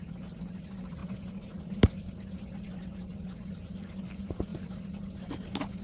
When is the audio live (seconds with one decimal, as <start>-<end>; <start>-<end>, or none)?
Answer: 0.0-5.8